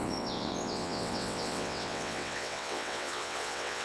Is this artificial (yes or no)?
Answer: yes